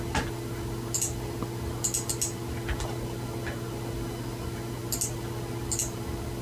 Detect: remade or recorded recorded